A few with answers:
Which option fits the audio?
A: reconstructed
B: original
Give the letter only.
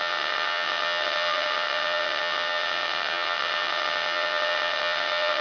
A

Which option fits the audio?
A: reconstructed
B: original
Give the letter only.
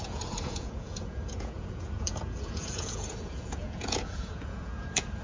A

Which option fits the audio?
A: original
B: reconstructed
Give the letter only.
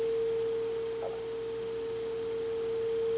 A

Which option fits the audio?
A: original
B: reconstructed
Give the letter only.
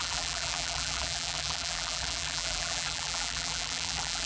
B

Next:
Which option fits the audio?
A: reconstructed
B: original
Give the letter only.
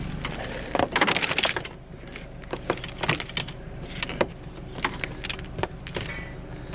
B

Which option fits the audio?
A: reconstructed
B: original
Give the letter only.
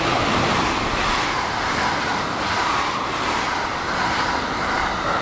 B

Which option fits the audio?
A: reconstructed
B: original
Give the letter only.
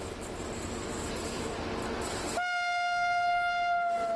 B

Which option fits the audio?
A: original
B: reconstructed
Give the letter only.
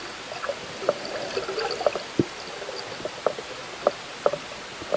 A